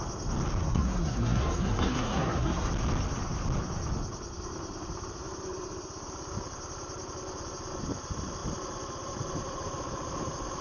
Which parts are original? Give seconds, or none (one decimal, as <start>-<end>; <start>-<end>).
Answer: 0.0-0.6; 2.7-10.6